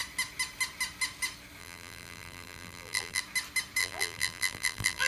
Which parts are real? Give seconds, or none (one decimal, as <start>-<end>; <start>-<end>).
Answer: 0.0-1.6; 3.2-3.8